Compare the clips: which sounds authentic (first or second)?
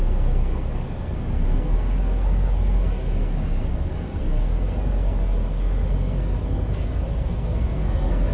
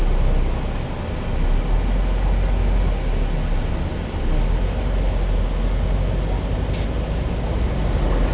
second